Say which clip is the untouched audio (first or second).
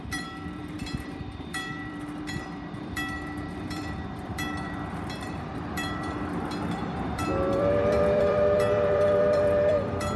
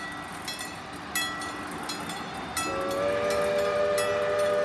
second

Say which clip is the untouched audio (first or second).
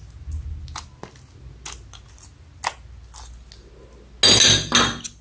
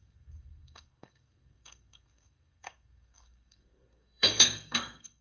first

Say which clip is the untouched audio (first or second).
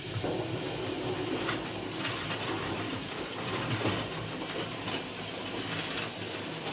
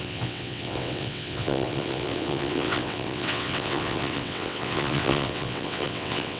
first